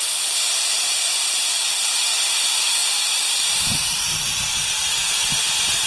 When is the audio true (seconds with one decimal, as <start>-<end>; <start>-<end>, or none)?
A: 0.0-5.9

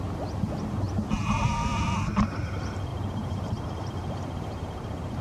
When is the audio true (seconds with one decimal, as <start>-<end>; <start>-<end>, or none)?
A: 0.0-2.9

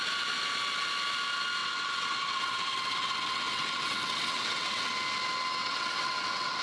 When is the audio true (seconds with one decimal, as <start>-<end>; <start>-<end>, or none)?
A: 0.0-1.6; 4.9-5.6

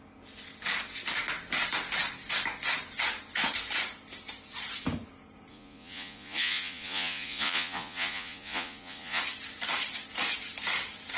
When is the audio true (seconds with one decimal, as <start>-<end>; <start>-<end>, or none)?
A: 0.0-5.5; 9.2-11.2